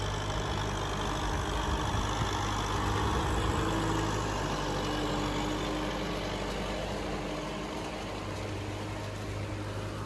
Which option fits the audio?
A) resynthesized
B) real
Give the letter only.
B